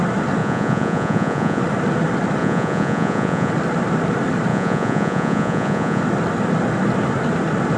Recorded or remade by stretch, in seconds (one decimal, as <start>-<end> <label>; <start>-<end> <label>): 0.0-0.4 recorded; 0.4-1.6 remade; 1.6-2.4 recorded; 2.4-3.5 remade; 3.5-4.5 recorded; 4.5-6.0 remade; 6.0-7.8 recorded